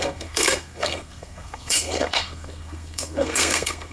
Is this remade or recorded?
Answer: remade